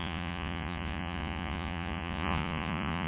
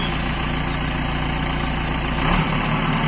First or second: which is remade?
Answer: first